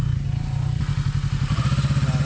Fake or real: real